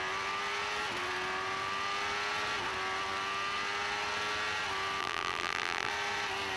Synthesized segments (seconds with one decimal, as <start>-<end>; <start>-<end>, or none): 5.0-5.9

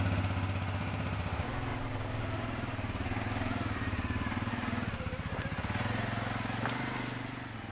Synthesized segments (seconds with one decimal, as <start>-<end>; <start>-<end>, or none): 1.7-4.5